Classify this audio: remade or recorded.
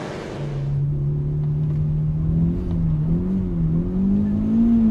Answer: recorded